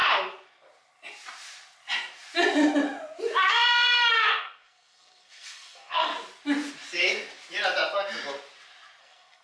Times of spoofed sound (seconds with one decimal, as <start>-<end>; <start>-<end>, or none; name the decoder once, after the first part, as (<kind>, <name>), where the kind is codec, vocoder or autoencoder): 4.1-6.1 (codec, SNAC); 9.0-9.4